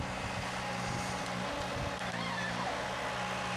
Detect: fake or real real